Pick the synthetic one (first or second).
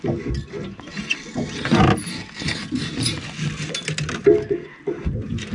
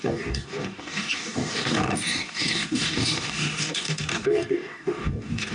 second